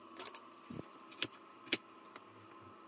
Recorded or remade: recorded